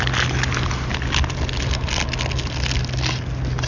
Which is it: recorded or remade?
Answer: recorded